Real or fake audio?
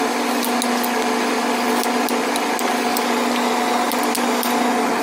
real